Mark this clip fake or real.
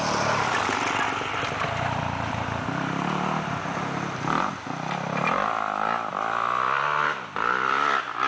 real